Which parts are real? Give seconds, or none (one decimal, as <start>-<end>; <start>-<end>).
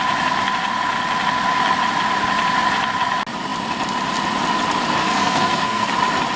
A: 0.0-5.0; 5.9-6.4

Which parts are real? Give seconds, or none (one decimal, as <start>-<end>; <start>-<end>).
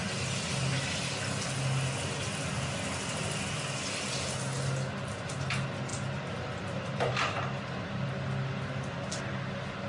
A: 0.0-5.9; 8.1-9.9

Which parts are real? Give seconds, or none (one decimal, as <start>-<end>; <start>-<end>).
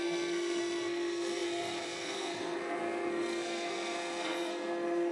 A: none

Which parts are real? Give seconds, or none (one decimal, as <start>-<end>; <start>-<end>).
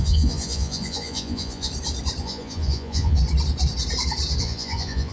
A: 1.7-2.2; 3.2-4.4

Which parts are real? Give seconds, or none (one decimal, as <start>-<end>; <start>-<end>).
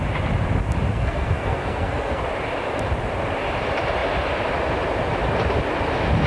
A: 0.0-0.9; 2.2-6.3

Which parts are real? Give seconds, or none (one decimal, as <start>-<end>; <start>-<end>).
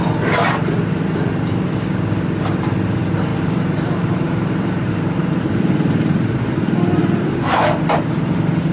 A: 0.0-3.3; 6.6-7.0